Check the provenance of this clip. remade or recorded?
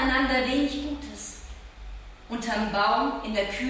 recorded